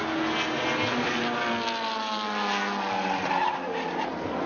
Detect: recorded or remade recorded